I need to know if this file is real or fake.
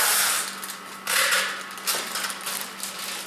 real